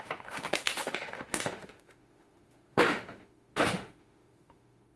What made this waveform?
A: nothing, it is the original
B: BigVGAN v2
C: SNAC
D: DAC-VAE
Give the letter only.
D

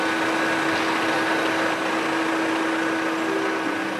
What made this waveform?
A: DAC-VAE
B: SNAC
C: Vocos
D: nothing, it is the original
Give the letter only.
D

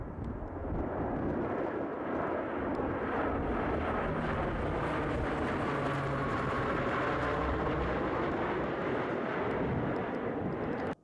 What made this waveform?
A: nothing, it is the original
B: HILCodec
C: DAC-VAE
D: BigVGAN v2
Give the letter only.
A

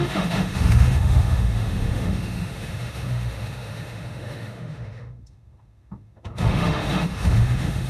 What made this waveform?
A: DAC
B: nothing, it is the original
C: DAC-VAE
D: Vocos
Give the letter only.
C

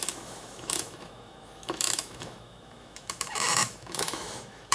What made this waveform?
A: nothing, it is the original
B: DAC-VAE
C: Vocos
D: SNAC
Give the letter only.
B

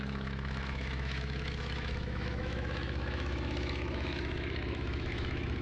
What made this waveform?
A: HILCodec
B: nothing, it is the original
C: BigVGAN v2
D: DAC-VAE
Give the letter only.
D